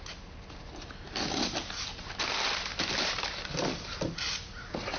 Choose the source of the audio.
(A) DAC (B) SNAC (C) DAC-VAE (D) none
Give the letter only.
D